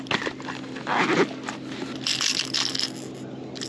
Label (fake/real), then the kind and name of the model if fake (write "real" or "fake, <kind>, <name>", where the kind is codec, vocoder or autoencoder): real